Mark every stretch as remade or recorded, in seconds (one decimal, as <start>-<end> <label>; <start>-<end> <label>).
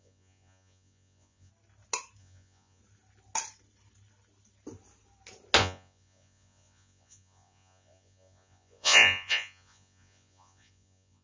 0.0-1.5 remade; 1.5-2.2 recorded; 2.2-2.8 remade; 2.8-5.6 recorded; 5.6-11.2 remade